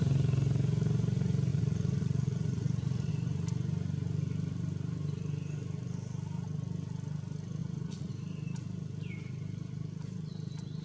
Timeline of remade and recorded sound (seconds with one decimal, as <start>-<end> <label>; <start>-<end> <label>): 0.0-1.5 recorded; 1.5-3.1 remade; 3.1-7.6 recorded; 7.6-8.1 remade; 8.1-10.8 recorded